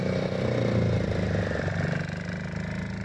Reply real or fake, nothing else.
real